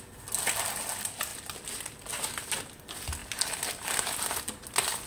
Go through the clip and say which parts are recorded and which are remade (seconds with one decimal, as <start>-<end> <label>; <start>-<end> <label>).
0.0-3.2 recorded; 3.2-4.0 remade; 4.0-5.1 recorded

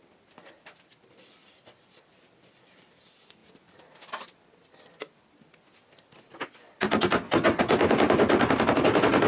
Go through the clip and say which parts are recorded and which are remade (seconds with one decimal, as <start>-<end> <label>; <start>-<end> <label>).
0.0-3.4 remade; 3.4-7.6 recorded; 7.6-9.3 remade

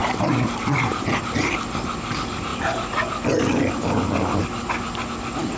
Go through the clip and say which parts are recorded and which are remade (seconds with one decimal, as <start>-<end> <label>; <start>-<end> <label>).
0.0-1.3 remade; 1.3-5.6 recorded

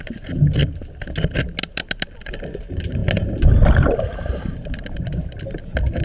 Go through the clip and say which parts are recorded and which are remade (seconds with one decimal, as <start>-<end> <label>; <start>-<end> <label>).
0.0-6.0 recorded

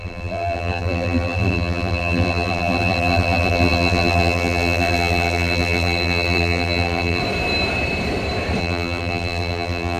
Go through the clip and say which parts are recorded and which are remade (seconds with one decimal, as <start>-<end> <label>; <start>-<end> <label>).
0.0-7.2 remade; 7.2-8.6 recorded; 8.6-10.0 remade

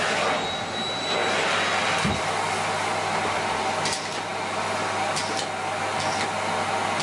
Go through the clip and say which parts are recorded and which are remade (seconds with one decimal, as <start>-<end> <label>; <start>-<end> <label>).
0.0-7.0 recorded

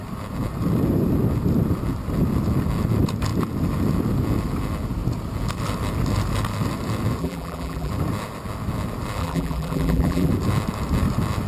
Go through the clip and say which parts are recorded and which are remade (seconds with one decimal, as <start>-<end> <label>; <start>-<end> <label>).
0.0-7.2 recorded; 7.2-7.9 remade; 7.9-9.2 recorded; 9.2-10.3 remade; 10.3-11.5 recorded

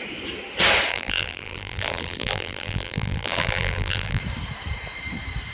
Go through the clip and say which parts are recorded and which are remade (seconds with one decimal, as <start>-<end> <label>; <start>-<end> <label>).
0.0-0.9 recorded; 0.9-4.2 remade; 4.2-5.5 recorded